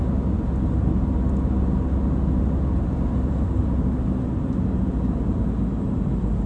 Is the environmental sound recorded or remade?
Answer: recorded